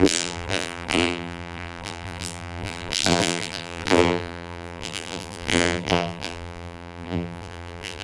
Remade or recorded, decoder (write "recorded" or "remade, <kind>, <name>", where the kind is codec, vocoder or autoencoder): remade, vocoder, BigVGAN v2